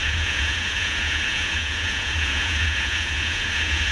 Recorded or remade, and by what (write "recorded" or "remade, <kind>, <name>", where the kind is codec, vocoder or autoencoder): remade, vocoder, Vocos